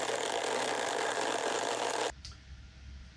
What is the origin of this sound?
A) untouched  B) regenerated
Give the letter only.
A